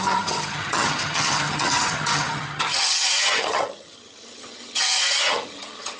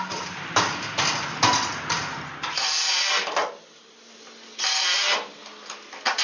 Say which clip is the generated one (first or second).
first